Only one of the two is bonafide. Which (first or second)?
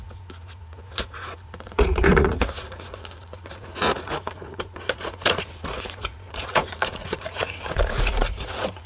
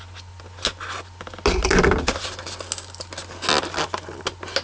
second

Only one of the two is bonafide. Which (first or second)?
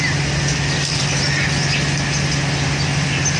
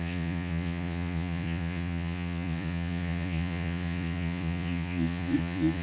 first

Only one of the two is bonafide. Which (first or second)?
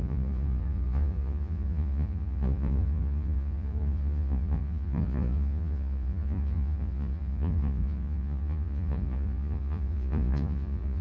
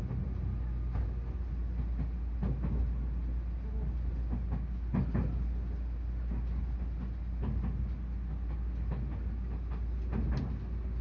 second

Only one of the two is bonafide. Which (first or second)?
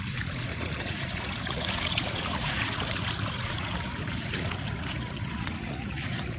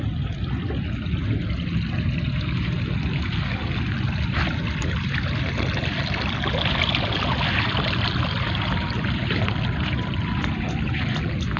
second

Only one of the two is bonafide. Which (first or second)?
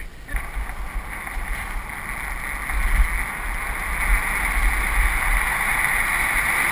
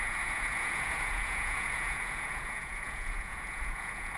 first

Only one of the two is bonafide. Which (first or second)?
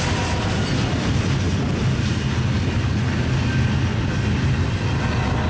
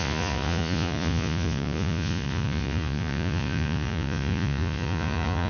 first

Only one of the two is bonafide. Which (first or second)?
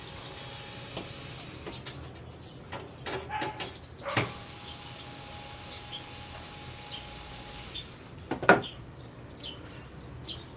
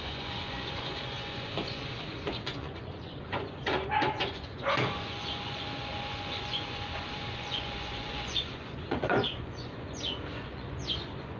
first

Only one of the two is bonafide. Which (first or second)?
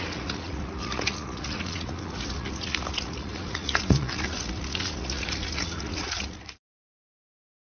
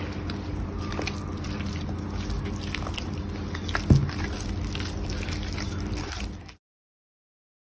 second